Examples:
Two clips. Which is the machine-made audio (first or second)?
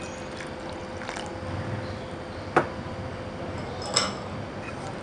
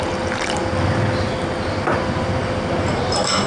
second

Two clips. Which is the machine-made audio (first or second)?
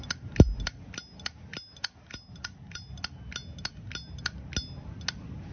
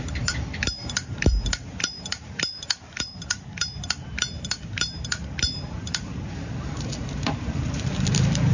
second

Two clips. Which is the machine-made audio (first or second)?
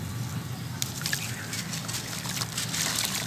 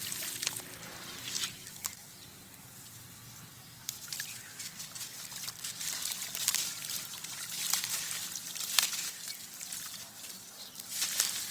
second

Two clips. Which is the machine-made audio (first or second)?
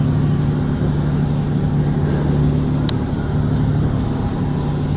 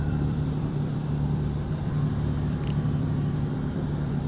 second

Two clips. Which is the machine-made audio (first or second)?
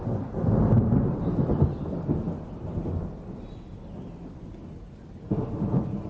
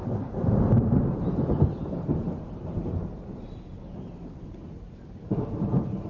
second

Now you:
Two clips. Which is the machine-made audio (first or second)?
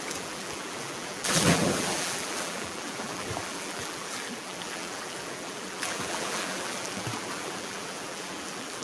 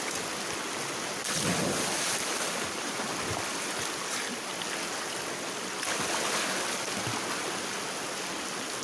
first